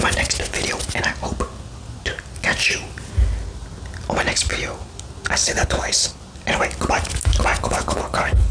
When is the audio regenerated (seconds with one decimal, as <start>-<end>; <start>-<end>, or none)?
5.4-6.2; 7.6-8.5